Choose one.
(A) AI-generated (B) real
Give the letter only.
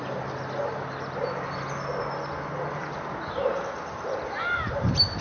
B